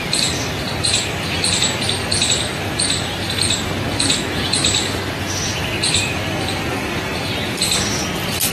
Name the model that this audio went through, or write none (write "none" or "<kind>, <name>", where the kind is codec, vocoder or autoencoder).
none